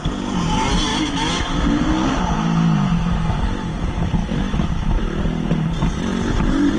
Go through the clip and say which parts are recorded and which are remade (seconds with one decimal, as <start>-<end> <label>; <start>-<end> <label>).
0.0-0.9 recorded; 0.9-1.5 remade; 1.5-4.2 recorded; 4.2-5.0 remade; 5.0-6.8 recorded